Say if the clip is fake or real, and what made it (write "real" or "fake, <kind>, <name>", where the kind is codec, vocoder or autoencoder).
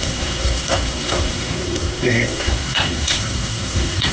fake, codec, SNAC